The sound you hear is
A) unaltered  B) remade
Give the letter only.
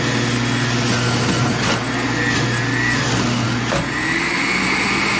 A